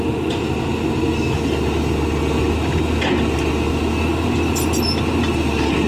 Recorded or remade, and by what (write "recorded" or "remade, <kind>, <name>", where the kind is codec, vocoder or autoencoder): recorded